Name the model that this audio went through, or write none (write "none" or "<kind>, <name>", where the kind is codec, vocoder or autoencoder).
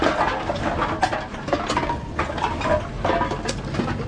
none